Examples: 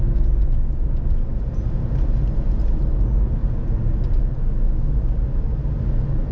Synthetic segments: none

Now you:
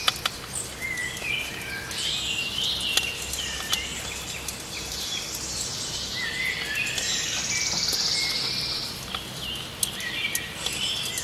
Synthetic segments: none